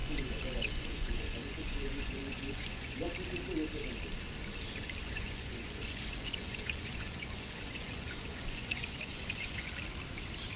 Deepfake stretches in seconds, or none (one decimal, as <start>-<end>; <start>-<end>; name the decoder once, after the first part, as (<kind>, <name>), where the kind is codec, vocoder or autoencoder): 0.0-3.1 (vocoder, Vocos); 5.0-9.7

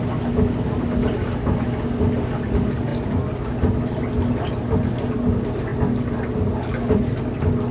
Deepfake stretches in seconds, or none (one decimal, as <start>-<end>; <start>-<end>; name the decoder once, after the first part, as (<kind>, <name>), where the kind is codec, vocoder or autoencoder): none

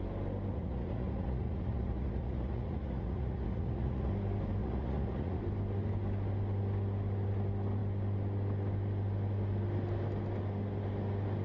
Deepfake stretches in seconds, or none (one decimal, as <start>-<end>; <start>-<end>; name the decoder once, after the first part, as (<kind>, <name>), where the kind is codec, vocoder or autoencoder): 0.5-4.1 (vocoder, Vocos); 4.6-5.4

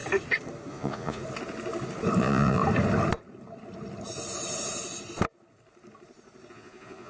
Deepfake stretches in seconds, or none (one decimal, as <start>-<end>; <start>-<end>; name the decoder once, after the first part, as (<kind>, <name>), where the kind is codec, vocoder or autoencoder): 0.7-1.2 (vocoder, Vocos); 2.2-2.6; 6.5-7.1

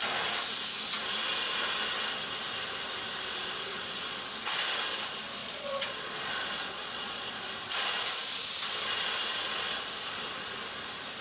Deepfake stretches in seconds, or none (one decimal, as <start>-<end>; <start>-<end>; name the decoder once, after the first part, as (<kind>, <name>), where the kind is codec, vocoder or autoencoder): 3.7-4.2 (vocoder, Vocos); 5.4-7.3